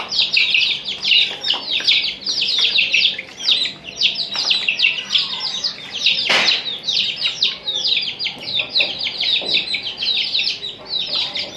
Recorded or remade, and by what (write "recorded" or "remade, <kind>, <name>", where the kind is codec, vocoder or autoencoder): recorded